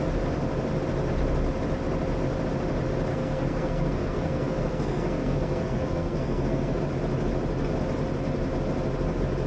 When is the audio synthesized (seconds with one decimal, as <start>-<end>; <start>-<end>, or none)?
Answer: 3.1-6.8